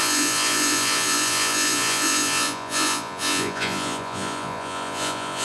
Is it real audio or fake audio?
fake